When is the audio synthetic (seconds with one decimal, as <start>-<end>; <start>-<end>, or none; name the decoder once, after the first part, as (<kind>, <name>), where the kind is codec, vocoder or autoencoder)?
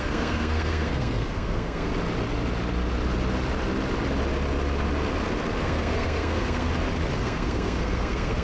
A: 0.0-1.9 (codec, SNAC); 5.6-6.7; 7.2-8.4